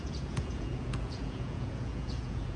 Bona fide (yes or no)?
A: no